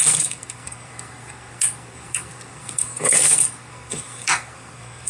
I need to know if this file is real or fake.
fake